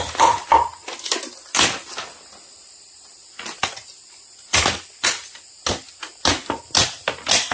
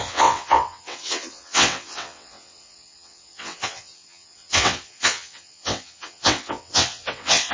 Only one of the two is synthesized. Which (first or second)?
second